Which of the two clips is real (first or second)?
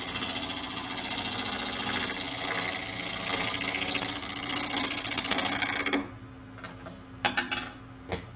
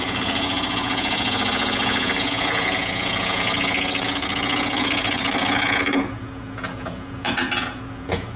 first